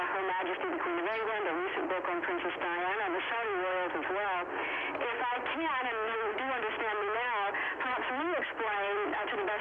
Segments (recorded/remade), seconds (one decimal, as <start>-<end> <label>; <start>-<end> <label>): 0.0-9.6 recorded